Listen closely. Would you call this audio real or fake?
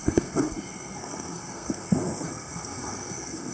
fake